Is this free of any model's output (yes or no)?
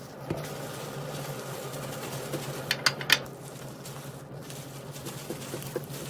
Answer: yes